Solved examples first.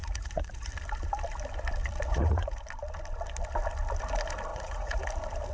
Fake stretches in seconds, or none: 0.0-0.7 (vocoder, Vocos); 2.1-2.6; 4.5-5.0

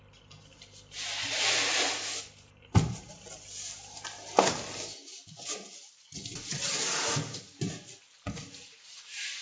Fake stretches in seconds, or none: none

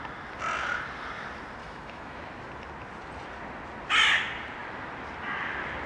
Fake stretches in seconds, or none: 1.6-2.2 (autoencoder, DAC-VAE)

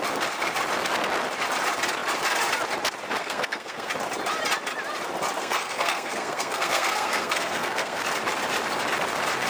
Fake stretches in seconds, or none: 3.2-3.9 (codec, SNAC); 5.4-8.0

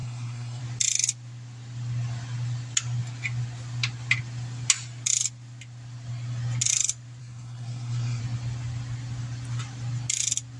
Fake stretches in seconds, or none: 0.0-0.6 (codec, SNAC); 7.2-8.2